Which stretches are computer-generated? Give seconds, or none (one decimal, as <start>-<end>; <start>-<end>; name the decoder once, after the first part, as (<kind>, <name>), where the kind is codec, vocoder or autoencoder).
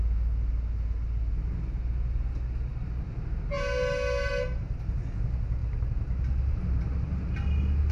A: none